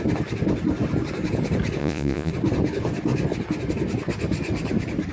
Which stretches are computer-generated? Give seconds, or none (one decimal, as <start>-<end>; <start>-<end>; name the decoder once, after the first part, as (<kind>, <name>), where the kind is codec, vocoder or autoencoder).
1.8-2.3 (vocoder, Vocos)